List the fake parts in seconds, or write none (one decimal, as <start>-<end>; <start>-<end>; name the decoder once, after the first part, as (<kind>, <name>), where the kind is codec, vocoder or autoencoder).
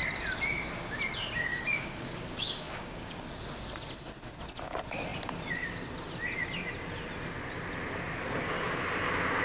1.5-3.2 (codec, DAC)